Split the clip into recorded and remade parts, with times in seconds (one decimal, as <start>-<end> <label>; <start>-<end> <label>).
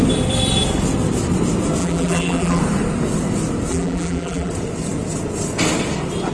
0.0-1.8 recorded; 1.8-2.6 remade; 2.6-3.7 recorded; 3.7-4.5 remade; 4.5-6.3 recorded